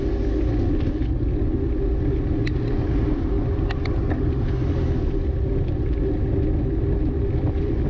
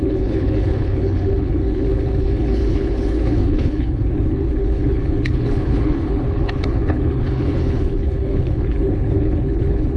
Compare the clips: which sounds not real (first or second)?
second